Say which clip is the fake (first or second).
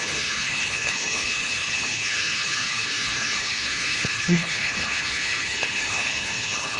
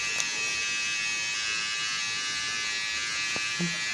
first